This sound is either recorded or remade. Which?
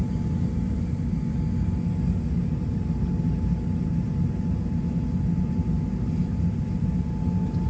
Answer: recorded